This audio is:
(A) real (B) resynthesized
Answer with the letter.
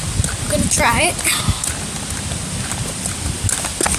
A